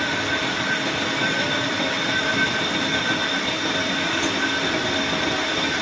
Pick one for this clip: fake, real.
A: real